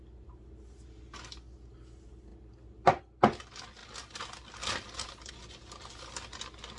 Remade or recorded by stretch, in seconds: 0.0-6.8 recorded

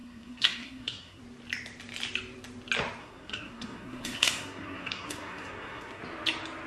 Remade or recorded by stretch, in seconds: 0.0-1.2 remade; 1.2-3.0 recorded; 3.0-6.0 remade; 6.0-6.7 recorded

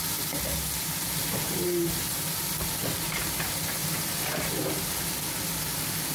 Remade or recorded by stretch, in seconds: 0.0-1.2 recorded; 1.2-2.2 remade; 2.2-3.8 recorded; 3.8-5.0 remade; 5.0-6.1 recorded

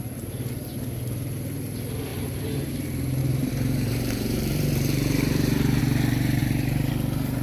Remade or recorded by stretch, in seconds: 0.0-2.1 recorded; 2.1-2.7 remade; 2.7-3.2 recorded; 3.2-5.8 remade; 5.8-6.4 recorded; 6.4-6.9 remade; 6.9-7.4 recorded